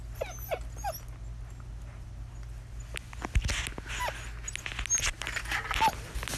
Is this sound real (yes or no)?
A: yes